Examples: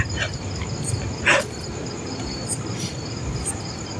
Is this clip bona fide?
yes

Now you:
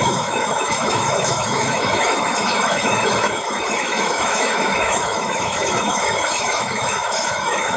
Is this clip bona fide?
no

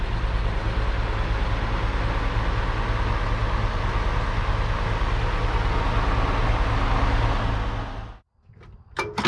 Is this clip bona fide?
yes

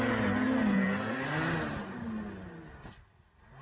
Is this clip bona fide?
yes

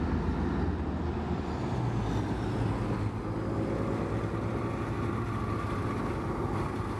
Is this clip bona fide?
yes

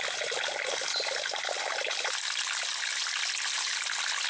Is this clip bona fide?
yes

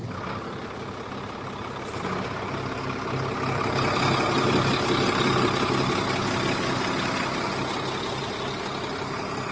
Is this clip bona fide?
yes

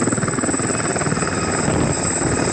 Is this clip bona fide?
yes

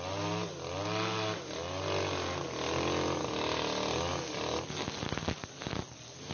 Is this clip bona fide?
yes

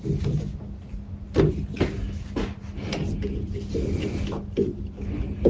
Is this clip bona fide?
yes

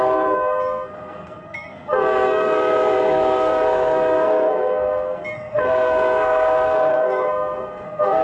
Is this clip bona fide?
no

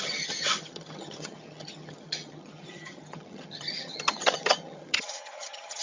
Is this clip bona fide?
no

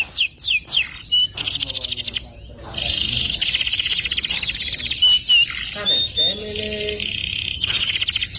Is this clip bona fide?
yes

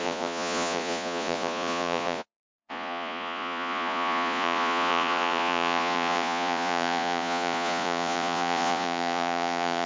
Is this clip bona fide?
no